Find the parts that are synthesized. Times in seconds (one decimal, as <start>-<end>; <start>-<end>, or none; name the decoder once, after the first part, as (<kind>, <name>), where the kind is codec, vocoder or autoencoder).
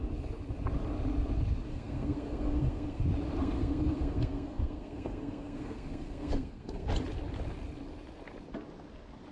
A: 1.7-3.0 (codec, SNAC); 3.4-6.9